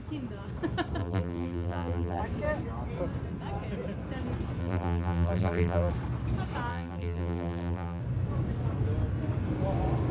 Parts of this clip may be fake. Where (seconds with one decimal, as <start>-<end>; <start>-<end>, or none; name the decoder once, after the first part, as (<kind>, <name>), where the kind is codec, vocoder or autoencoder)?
1.0-2.2 (vocoder, BigVGAN v2); 4.6-5.9; 6.7-8.0